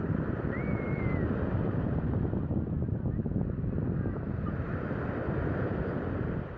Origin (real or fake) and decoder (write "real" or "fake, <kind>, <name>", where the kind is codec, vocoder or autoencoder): real